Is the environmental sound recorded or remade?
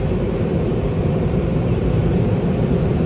remade